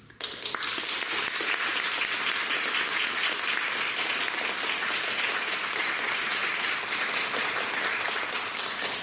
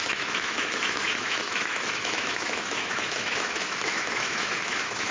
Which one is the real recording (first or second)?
first